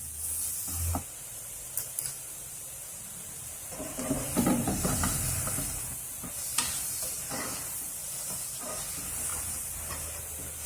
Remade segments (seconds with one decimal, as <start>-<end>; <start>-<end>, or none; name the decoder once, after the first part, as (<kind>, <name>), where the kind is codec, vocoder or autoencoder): 3.8-4.8 (vocoder, BigVGAN v2); 6.5-7.4; 9.3-9.9